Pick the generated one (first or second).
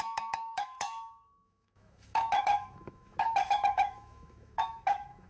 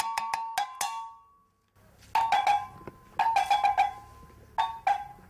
first